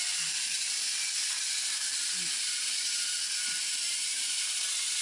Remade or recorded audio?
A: recorded